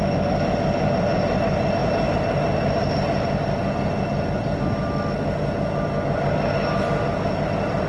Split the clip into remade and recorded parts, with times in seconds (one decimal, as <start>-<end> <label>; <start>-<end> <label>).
0.0-7.9 recorded